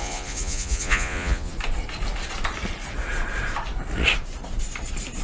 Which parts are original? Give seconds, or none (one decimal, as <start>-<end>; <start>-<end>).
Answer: 1.5-5.2